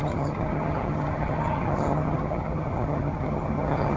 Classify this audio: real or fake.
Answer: fake